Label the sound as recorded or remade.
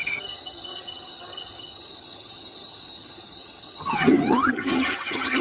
remade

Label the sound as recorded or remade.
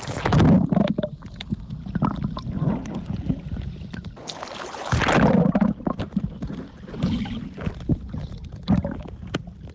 recorded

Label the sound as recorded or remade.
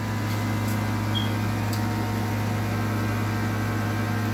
recorded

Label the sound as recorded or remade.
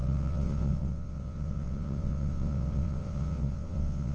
remade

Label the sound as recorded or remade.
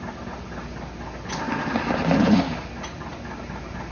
recorded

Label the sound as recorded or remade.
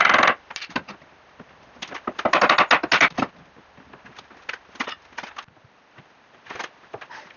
recorded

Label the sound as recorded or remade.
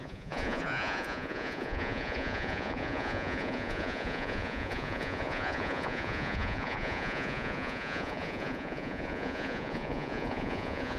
remade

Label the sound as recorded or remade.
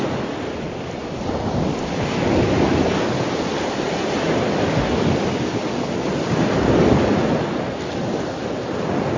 recorded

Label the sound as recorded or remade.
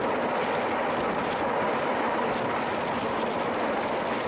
recorded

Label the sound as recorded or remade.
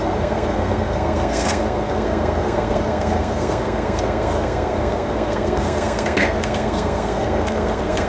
remade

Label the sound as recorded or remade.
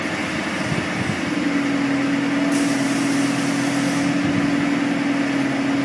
recorded